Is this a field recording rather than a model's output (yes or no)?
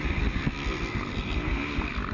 yes